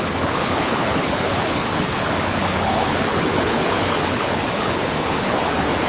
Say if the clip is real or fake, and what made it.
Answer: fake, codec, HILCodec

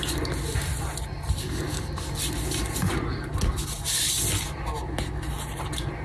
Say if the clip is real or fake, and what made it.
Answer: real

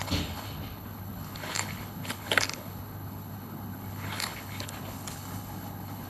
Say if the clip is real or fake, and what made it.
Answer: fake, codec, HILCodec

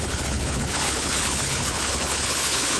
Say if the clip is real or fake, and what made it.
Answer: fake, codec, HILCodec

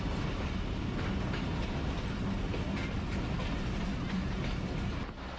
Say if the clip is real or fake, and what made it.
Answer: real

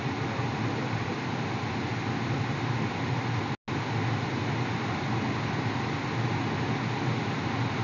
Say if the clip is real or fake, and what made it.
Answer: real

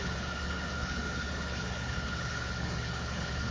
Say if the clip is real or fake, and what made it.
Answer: fake, codec, HILCodec